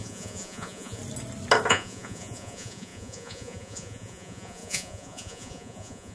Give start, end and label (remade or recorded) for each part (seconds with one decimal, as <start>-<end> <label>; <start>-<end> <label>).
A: 0.0-1.0 remade; 1.0-1.7 recorded; 1.7-6.1 remade